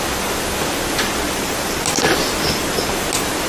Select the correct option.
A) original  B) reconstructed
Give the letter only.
A